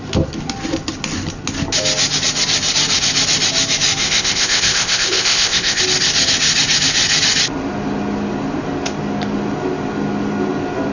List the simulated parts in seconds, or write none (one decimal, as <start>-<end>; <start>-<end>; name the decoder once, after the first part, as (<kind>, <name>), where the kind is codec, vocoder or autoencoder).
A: 4.0-5.8 (codec, ZipCodec)